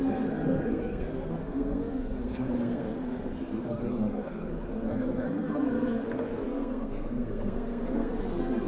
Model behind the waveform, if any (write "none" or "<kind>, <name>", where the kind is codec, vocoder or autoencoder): codec, SNAC